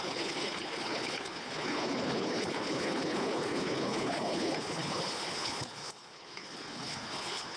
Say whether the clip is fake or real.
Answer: fake